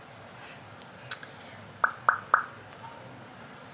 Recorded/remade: recorded